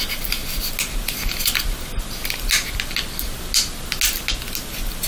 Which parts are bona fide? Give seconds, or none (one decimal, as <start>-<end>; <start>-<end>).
0.0-5.1